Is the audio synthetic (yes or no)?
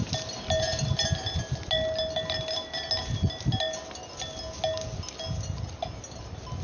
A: no